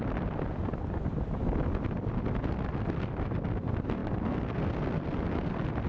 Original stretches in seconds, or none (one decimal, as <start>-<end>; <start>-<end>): 0.0-5.9